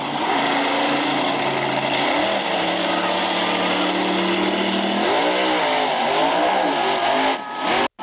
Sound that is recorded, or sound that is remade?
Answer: recorded